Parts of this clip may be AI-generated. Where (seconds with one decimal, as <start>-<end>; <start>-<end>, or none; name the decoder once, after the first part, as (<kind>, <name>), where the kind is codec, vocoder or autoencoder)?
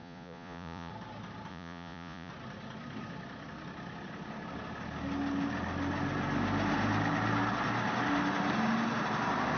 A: 0.0-0.9 (vocoder, Vocos); 1.5-2.3